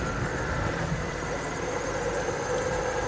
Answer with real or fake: fake